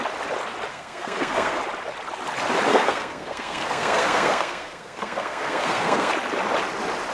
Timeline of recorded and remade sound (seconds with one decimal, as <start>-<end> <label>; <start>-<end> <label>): 0.0-0.7 recorded; 0.7-1.6 remade; 1.6-2.7 recorded; 2.7-6.1 remade; 6.1-7.1 recorded